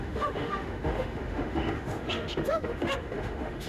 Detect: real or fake fake